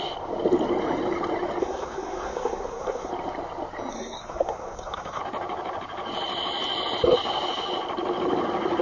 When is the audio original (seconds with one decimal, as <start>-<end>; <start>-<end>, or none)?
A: 0.0-1.6; 3.1-3.9; 5.2-8.8

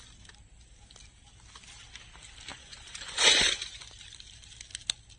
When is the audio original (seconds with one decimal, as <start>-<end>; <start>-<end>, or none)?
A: 0.0-2.5; 3.9-5.2

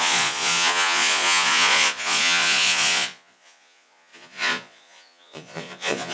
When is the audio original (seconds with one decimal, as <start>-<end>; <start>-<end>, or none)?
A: none

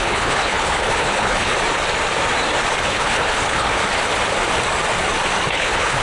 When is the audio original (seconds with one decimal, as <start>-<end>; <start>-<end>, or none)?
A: 1.5-2.8; 3.8-5.5

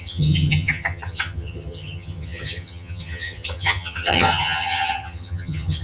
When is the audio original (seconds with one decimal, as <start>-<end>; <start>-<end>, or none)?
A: none

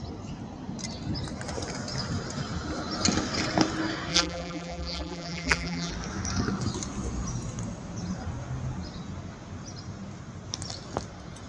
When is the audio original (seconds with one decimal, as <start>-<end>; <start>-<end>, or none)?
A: 0.0-4.1; 5.9-11.5

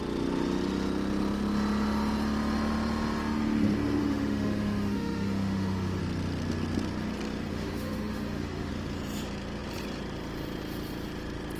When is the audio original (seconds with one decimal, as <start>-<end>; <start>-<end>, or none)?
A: 0.0-4.0; 6.0-7.5; 8.7-11.6